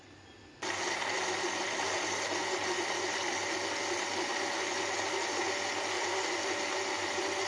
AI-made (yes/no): no